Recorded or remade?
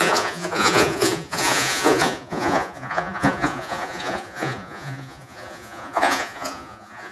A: remade